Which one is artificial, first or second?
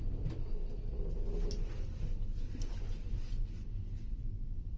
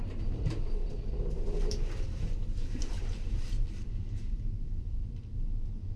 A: second